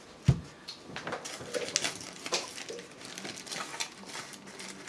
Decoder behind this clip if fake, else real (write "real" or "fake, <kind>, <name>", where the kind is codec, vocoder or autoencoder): real